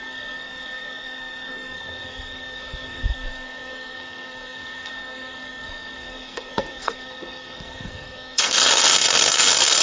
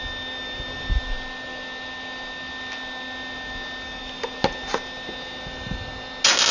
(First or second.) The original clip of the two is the second